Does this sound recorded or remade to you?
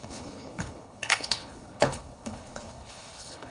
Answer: remade